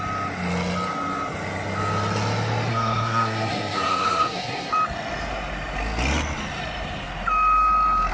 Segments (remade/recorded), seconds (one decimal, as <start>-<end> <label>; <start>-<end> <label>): 0.0-2.7 recorded; 2.7-4.7 remade; 4.7-8.1 recorded